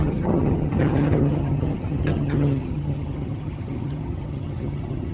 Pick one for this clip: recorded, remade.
remade